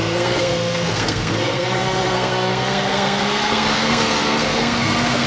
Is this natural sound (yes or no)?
no